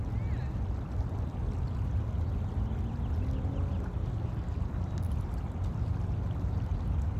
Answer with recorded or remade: recorded